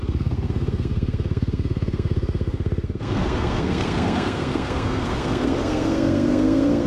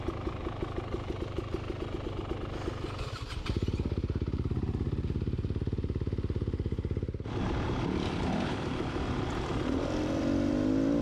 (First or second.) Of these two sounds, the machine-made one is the first